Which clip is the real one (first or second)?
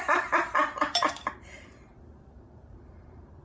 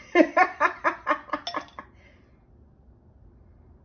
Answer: second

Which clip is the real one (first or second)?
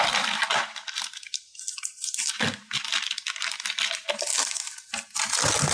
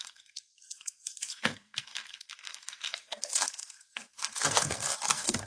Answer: first